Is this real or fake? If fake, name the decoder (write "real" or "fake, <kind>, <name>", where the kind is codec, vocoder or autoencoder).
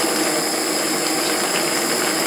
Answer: real